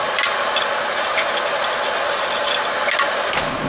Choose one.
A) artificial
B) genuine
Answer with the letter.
B